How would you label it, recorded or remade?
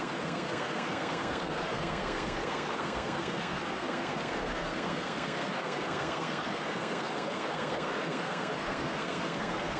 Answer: remade